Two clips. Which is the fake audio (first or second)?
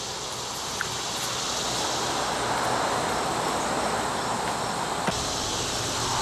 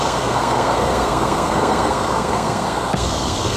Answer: second